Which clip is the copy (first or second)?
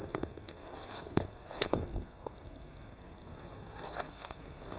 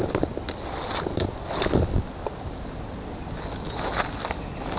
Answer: first